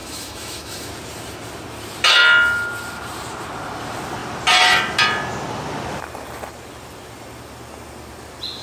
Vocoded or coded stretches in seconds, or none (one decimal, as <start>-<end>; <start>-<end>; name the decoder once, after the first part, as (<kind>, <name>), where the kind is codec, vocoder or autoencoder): 0.0-0.9 (autoencoder, DAC-VAE)